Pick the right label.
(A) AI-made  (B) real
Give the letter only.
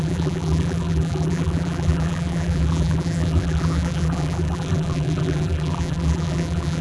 A